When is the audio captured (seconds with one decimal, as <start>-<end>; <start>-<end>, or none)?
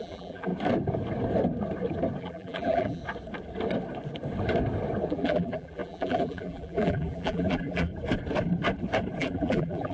0.5-2.2; 3.0-5.1; 7.9-9.2